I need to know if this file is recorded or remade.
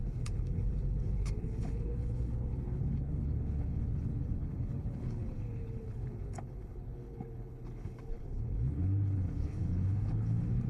remade